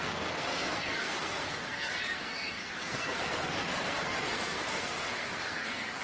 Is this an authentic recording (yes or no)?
no